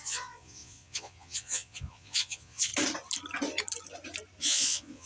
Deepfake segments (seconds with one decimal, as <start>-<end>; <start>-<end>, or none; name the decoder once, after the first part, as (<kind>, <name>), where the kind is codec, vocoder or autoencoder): 0.0-2.7 (vocoder, Vocos); 4.4-5.1